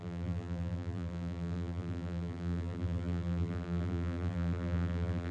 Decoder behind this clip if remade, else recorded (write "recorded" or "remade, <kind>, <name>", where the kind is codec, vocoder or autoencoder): remade, vocoder, BigVGAN v2